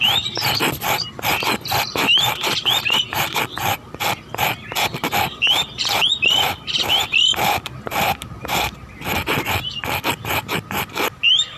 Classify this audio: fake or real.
real